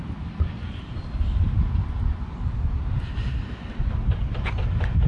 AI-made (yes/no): no